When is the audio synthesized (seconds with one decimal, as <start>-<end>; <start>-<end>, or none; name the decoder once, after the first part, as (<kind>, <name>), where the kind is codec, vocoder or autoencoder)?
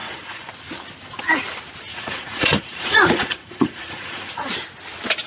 0.0-0.5 (vocoder, Vocos); 1.9-4.5